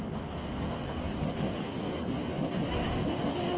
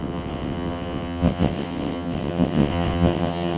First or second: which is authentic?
first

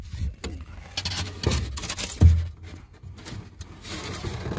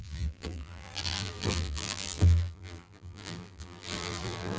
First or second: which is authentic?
first